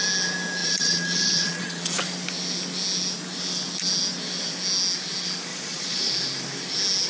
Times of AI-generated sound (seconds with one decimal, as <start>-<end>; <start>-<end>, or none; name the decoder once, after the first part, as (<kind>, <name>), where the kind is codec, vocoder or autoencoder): 0.6-2.0 (vocoder, Vocos); 5.5-6.1

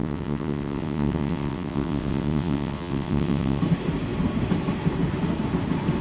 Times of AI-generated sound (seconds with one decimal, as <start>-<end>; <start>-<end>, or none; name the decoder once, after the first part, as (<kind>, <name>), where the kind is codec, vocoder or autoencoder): 0.0-3.6 (vocoder, WaveNeXt)

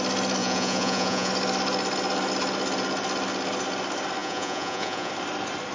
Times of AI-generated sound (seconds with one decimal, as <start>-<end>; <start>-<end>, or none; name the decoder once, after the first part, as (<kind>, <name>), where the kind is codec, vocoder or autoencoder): 0.4-1.3 (vocoder, Vocos); 4.2-5.1

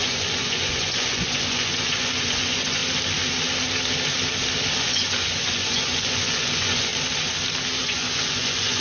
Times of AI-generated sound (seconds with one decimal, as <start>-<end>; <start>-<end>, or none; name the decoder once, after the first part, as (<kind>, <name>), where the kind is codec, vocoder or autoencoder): 0.0-2.8 (vocoder, Vocos); 4.8-6.9; 7.8-8.8

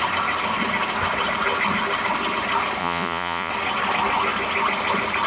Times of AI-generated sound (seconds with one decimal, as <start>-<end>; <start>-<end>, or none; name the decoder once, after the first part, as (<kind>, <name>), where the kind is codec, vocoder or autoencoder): 2.8-3.5 (vocoder, Vocos)

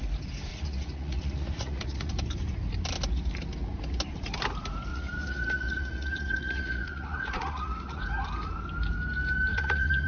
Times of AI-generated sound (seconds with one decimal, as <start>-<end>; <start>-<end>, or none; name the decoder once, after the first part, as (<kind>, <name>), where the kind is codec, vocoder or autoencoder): 0.5-2.1 (vocoder, Vocos); 4.9-8.0; 9.5-10.1

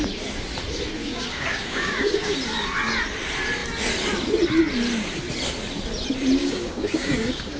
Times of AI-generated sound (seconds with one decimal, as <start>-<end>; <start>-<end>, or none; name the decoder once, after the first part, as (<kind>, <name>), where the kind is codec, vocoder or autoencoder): 1.0-2.3 (codec, DAC); 6.4-7.6

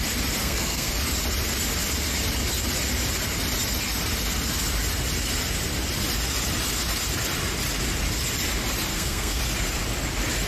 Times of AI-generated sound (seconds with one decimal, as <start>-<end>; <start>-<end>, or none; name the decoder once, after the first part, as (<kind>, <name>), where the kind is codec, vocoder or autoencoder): 0.4-0.9 (codec, SNAC); 8.9-9.4